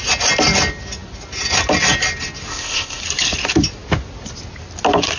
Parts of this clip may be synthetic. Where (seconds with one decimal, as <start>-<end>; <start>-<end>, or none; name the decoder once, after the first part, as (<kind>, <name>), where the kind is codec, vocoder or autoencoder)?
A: 2.5-3.0 (codec, ZipCodec)